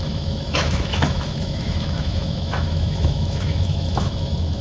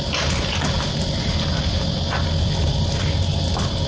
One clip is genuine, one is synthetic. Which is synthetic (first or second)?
first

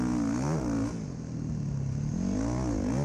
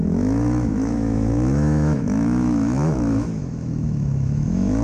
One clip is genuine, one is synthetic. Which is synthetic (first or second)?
second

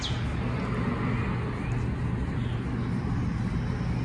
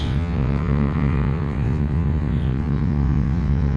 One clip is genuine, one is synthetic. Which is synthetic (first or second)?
second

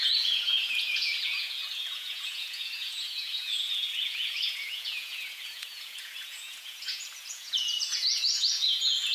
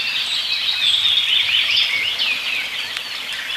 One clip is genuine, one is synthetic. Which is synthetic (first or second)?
first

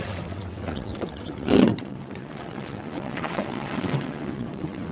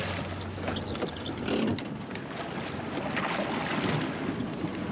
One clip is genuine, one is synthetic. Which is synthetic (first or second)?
first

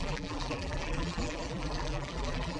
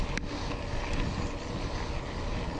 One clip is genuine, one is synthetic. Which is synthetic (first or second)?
first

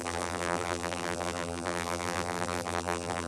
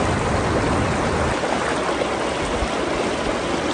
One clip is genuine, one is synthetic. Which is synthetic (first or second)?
first